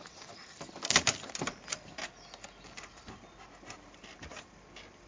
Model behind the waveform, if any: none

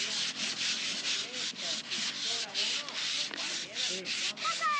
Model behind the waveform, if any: none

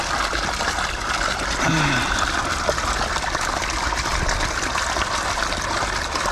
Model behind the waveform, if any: none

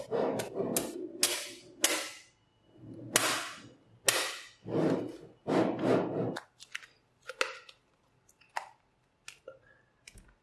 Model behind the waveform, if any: none